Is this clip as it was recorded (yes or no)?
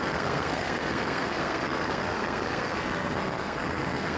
no